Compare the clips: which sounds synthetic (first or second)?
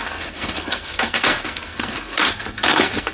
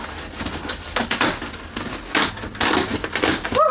first